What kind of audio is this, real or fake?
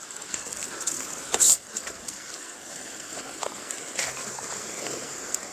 fake